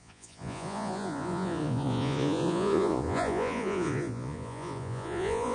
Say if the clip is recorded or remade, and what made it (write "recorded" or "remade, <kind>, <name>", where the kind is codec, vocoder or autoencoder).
remade, vocoder, Vocos